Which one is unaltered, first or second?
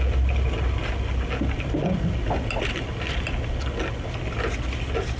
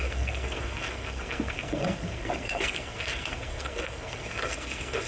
first